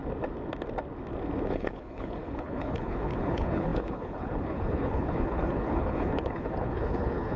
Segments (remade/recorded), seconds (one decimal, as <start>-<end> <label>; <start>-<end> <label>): 0.0-1.5 recorded; 1.5-7.4 remade